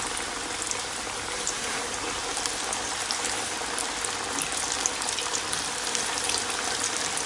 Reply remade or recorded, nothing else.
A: recorded